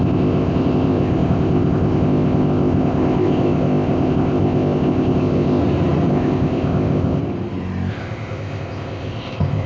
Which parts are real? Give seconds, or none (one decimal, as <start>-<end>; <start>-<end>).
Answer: 5.6-6.1; 7.2-7.9